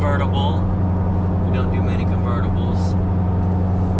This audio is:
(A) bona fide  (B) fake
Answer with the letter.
A